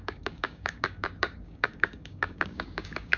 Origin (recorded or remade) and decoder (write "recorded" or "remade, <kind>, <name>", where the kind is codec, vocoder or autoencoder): remade, codec, DAC